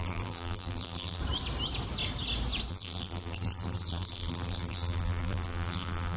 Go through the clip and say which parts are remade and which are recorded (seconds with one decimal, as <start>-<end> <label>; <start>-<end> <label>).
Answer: 0.0-1.2 remade; 1.2-2.7 recorded; 2.7-6.2 remade